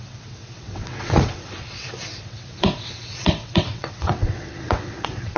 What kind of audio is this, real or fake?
fake